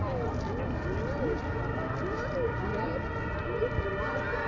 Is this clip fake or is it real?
real